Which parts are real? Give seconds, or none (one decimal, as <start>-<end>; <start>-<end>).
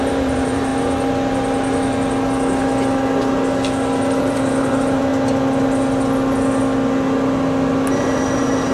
0.7-4.2; 5.1-7.9